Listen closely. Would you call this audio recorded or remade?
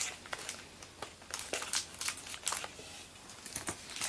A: recorded